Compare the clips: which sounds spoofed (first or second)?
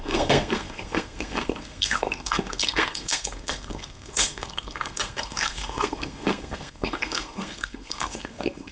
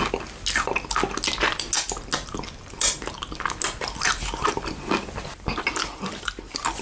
first